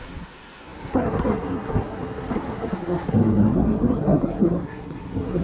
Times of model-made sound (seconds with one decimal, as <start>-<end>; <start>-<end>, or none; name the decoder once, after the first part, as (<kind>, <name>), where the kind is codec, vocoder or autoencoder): 0.0-5.4 (codec, SNAC)